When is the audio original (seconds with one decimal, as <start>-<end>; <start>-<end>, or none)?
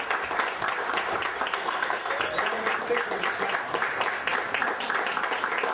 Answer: 0.0-1.5; 2.1-5.7